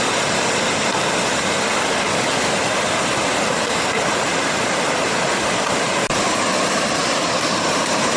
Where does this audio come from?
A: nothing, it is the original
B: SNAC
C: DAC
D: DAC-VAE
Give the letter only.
A